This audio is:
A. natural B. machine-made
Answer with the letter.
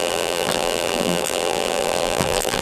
B